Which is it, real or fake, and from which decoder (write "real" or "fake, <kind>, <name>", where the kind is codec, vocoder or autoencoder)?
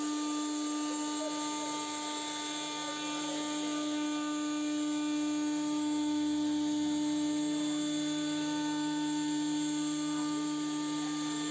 real